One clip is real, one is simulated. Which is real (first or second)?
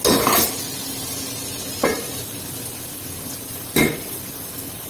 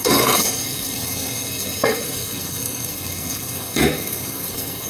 first